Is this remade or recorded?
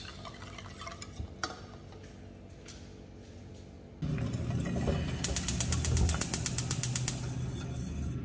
recorded